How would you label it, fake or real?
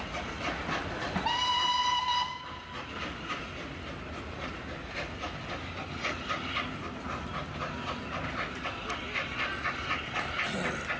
real